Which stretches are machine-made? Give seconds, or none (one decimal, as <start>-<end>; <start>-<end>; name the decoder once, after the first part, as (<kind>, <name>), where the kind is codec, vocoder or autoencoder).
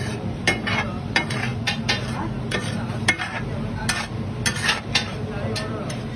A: 0.0-1.5 (vocoder, BigVGAN v2); 2.4-3.8; 5.8-6.2